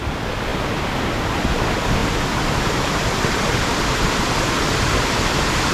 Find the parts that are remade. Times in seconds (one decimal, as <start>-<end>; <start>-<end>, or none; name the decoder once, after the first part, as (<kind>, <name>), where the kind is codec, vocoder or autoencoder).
none